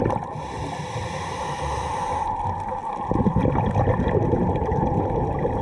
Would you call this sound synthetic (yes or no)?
no